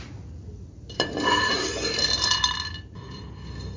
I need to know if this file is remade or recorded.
recorded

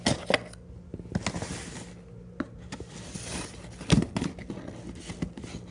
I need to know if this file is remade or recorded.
recorded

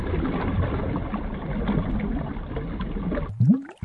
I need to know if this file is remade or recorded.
recorded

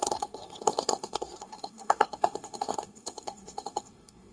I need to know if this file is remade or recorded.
remade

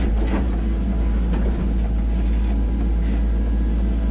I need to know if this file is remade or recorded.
recorded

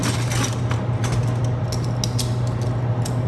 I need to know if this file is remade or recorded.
recorded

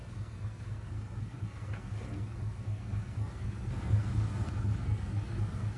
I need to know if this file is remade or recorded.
remade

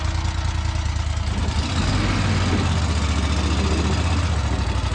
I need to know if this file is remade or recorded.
recorded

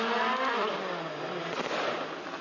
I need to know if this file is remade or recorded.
recorded